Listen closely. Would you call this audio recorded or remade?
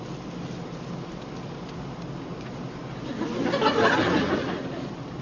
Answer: recorded